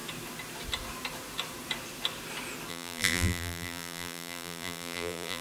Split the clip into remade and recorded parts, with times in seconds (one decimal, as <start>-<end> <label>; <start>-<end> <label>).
0.0-2.7 recorded; 2.7-5.4 remade